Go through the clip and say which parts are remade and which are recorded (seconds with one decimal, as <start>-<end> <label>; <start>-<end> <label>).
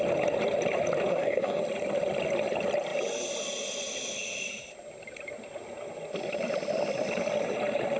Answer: 0.0-1.1 recorded; 1.1-1.6 remade; 1.6-8.0 recorded